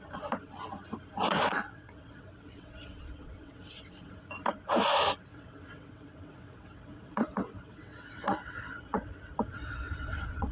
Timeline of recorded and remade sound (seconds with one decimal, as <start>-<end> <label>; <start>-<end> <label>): 0.0-1.5 recorded; 1.5-4.1 remade; 4.1-5.3 recorded; 5.3-10.5 remade